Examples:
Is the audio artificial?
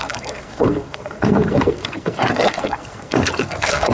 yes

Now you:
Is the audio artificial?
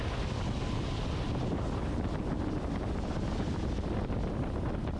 no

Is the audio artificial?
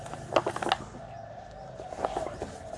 no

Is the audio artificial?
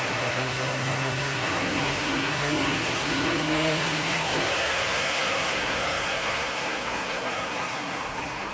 yes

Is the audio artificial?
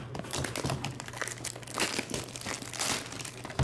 no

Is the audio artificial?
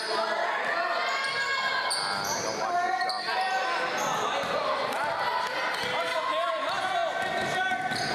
no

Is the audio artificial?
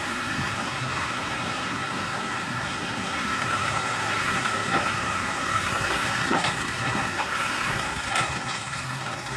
yes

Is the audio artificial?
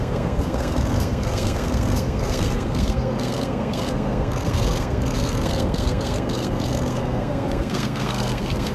yes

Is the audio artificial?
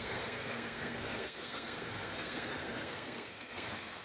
yes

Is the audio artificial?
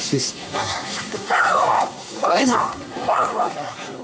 yes